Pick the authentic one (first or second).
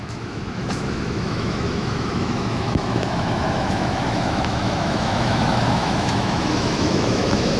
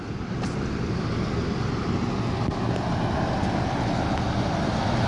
second